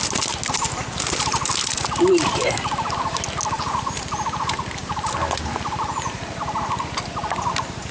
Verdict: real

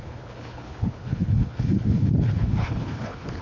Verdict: fake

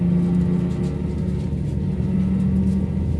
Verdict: real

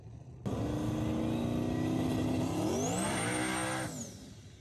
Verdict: real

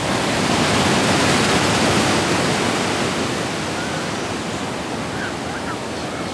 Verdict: real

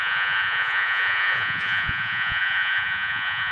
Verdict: fake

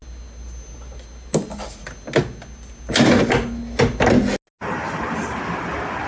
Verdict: real